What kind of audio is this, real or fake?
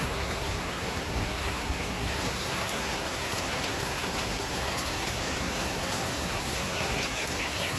fake